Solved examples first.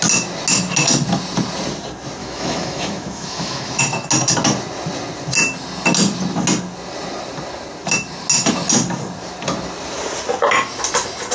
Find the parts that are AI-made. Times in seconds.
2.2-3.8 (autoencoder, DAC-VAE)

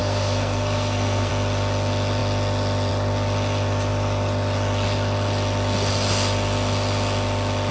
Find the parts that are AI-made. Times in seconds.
0.0-1.3 (codec, SNAC)